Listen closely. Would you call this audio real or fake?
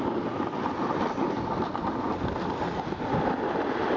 real